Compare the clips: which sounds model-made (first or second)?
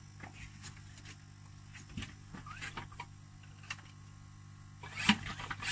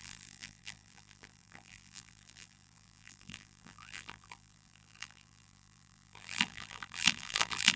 second